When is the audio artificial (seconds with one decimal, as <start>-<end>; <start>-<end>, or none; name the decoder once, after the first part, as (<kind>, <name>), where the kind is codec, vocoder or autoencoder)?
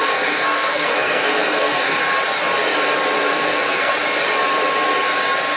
0.0-2.0 (codec, SNAC); 3.3-3.9